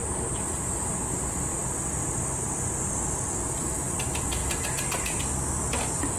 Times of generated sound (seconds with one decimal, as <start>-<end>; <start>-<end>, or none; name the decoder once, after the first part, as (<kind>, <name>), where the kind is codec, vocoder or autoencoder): 0.0-0.7 (vocoder, BigVGAN v2); 4.4-5.2